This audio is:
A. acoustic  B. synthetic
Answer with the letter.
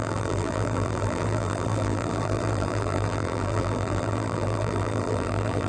B